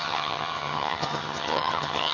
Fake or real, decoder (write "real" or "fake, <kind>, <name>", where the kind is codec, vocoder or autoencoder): fake, vocoder, HiFi-GAN